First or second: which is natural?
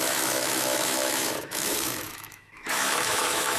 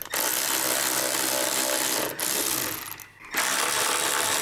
second